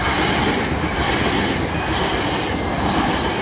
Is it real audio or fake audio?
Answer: real